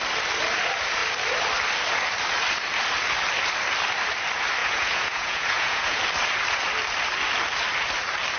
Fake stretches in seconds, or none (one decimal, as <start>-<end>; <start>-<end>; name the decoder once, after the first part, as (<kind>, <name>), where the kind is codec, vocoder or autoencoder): 4.6-6.0 (vocoder, Vocos)